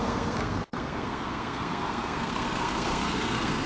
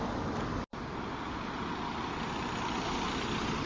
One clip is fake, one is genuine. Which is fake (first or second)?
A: first